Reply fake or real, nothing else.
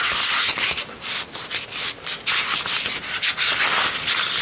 real